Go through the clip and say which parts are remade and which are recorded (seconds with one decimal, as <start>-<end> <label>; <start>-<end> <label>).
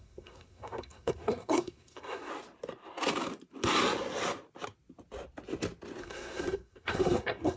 0.0-2.3 remade; 2.3-6.0 recorded; 6.0-7.6 remade